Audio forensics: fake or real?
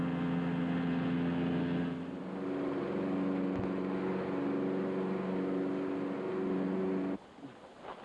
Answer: real